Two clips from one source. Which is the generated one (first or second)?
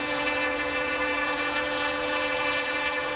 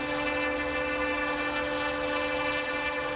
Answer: first